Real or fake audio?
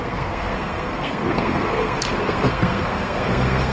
fake